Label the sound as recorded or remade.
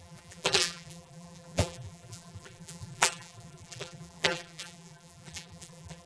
remade